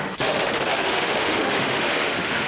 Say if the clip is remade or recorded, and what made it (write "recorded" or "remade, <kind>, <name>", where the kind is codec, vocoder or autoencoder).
remade, autoencoder, DAC-VAE